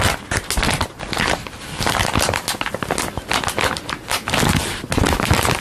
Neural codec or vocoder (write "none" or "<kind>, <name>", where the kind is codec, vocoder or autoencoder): none